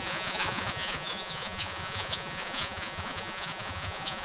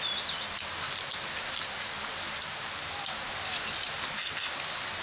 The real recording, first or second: second